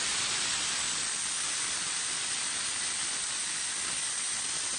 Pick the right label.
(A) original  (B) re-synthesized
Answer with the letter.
A